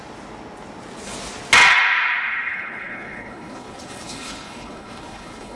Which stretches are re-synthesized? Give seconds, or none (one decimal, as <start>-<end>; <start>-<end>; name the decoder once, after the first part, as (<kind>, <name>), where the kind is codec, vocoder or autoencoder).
2.5-5.6 (codec, HILCodec)